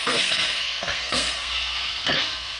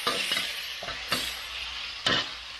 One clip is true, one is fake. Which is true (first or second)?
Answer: second